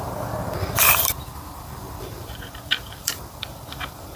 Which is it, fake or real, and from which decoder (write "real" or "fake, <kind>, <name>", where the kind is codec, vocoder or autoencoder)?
fake, vocoder, BigVGAN v2